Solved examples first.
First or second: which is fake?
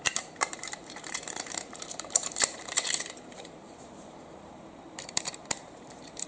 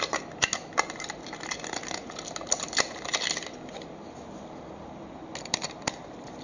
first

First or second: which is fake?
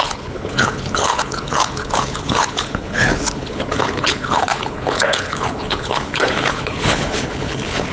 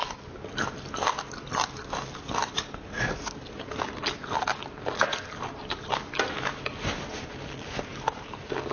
first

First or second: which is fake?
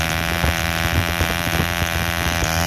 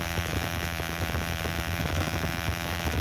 second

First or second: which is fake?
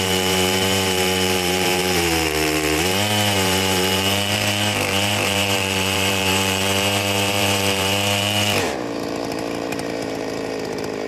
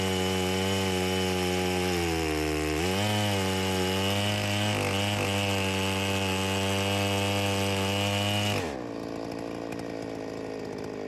first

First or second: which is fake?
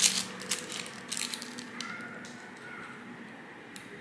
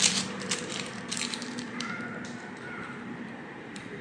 second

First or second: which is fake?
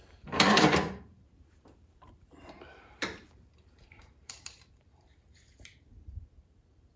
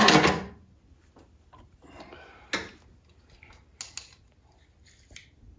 first